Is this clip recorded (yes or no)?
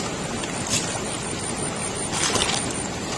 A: yes